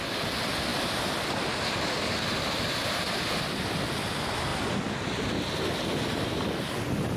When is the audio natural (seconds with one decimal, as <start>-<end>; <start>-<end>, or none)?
0.0-7.2